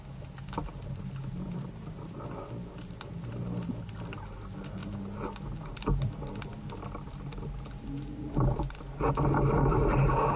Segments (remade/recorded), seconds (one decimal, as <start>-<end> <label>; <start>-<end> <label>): 0.0-10.4 recorded